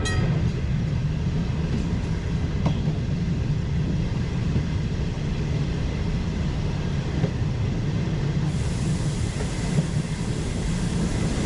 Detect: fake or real real